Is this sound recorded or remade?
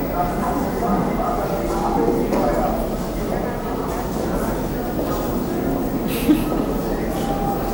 recorded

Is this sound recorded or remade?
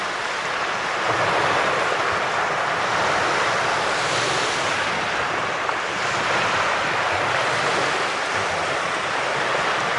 recorded